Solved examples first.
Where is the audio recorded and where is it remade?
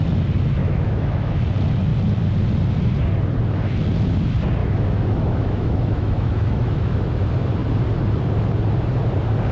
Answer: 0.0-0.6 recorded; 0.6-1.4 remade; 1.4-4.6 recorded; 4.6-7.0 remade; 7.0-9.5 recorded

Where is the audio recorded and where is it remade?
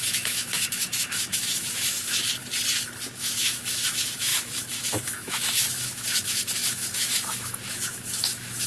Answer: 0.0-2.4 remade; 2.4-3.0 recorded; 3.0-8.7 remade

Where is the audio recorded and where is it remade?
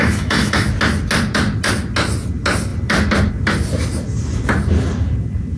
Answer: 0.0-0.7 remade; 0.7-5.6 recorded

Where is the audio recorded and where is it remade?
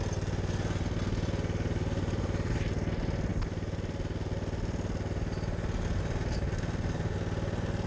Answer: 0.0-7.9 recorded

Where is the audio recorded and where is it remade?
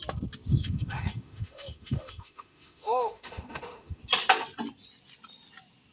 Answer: 0.0-0.5 recorded; 0.5-4.0 remade; 4.0-5.9 recorded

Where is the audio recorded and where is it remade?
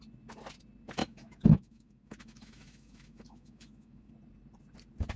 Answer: 0.0-1.0 recorded; 1.0-4.1 remade; 4.1-5.2 recorded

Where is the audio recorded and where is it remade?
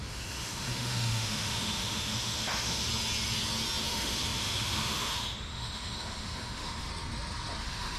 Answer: 0.0-2.9 remade; 2.9-3.8 recorded; 3.8-6.9 remade; 6.9-7.6 recorded; 7.6-8.0 remade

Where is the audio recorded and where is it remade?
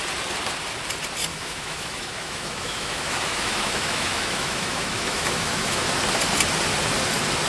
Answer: 0.0-1.3 recorded; 1.3-5.8 remade; 5.8-7.5 recorded